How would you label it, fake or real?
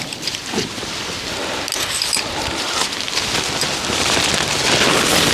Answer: real